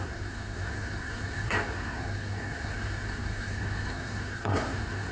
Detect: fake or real fake